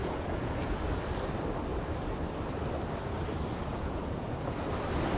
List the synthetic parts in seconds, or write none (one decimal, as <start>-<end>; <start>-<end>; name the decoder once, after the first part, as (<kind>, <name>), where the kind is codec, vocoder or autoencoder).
0.0-0.8 (vocoder, Vocos); 3.7-4.6